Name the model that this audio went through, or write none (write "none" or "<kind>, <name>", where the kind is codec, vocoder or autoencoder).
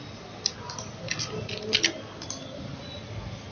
none